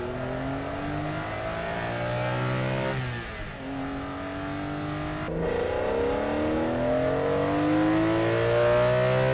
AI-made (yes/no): no